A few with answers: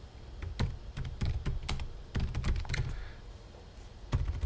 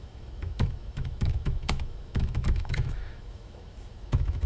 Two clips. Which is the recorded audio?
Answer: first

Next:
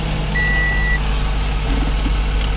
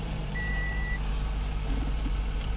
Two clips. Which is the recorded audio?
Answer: first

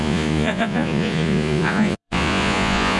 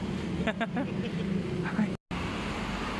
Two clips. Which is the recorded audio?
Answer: second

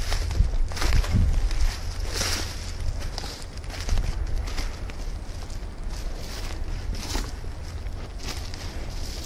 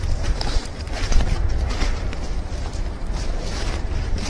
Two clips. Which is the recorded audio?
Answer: first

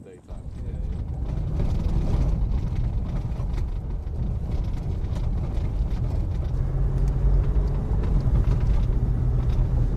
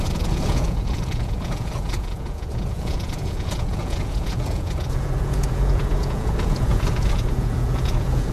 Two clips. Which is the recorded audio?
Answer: first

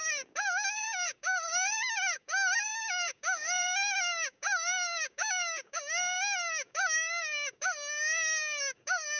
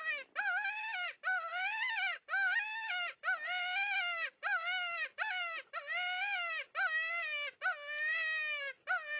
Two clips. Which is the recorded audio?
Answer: second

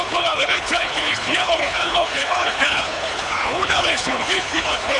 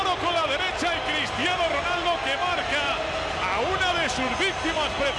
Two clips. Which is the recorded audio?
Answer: second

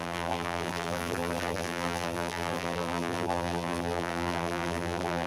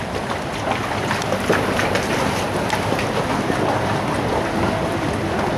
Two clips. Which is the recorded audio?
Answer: second